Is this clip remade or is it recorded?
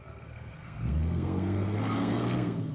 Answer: remade